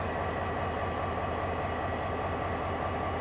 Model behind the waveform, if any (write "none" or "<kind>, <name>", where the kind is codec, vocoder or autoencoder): none